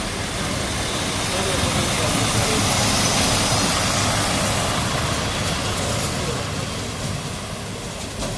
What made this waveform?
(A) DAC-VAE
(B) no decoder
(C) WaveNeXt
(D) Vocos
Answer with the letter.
B